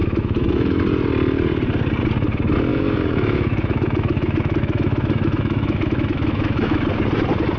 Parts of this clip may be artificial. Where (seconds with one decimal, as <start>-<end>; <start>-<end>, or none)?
0.0-0.8; 2.7-6.8